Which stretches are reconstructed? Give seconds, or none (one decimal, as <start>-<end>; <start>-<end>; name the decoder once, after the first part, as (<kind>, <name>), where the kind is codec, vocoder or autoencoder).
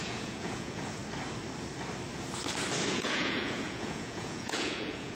0.0-1.0 (vocoder, Vocos); 2.9-5.1